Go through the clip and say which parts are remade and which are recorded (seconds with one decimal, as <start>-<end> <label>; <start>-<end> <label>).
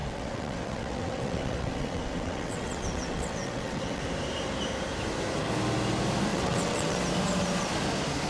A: 0.0-4.0 remade; 4.0-6.3 recorded; 6.3-7.0 remade; 7.0-8.3 recorded